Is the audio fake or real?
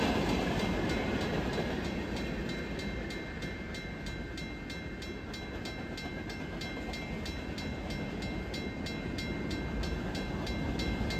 real